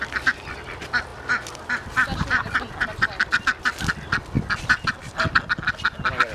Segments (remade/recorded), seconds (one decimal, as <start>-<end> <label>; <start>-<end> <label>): 0.0-6.3 recorded